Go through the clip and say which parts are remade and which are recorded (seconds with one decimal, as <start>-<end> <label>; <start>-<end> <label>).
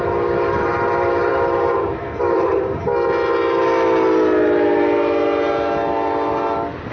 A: 0.0-2.5 remade; 2.5-6.9 recorded